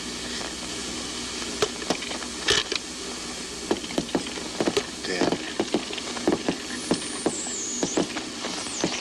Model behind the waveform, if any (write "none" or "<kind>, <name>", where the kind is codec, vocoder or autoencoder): none